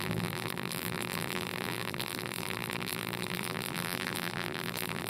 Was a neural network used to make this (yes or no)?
yes